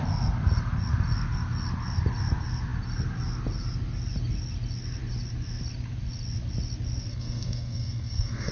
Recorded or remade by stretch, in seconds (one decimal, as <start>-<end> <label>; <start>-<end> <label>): 0.0-7.1 recorded; 7.1-8.5 remade